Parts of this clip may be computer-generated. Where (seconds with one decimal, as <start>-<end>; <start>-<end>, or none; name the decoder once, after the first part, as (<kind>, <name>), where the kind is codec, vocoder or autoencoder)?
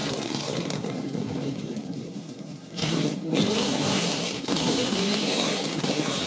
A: 0.0-6.3 (codec, SNAC)